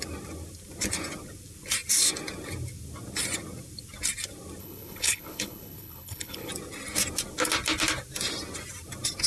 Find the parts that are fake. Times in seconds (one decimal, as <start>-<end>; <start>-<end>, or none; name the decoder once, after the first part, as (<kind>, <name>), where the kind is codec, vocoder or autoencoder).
4.6-6.5 (codec, HILCodec)